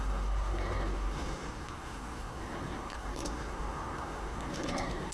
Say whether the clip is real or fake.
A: fake